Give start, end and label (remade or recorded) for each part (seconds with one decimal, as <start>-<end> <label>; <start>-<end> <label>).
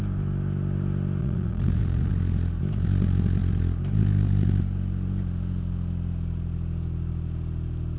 0.0-1.2 recorded; 1.2-2.1 remade; 2.1-8.0 recorded